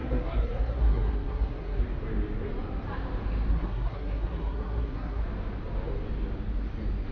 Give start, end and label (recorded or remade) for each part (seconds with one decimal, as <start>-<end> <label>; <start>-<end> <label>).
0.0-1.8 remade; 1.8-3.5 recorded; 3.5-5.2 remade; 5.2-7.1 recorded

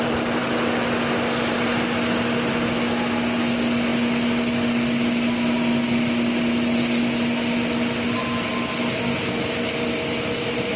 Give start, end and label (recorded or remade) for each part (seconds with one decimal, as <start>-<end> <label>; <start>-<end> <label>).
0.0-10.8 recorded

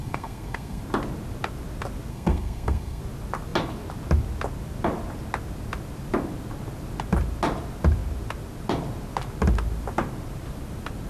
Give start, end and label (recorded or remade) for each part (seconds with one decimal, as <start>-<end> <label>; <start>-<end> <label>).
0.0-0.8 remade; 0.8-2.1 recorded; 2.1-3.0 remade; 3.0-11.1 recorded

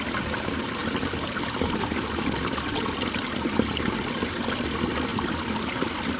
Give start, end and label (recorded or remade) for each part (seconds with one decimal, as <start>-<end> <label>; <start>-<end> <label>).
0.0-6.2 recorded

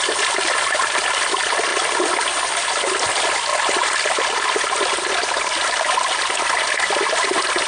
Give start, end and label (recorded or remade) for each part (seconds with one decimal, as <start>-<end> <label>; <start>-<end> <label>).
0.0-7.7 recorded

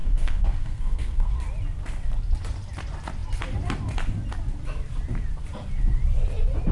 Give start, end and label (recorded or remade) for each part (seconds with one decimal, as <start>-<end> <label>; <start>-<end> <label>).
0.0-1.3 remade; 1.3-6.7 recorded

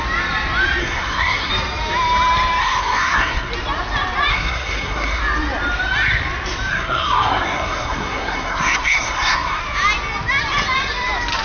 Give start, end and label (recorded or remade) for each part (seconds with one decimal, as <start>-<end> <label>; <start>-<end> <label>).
0.0-0.8 recorded; 0.8-1.5 remade; 1.5-2.6 recorded; 2.6-3.5 remade; 3.5-4.3 recorded; 4.3-5.2 remade; 5.2-6.7 recorded; 6.7-9.6 remade; 9.6-11.4 recorded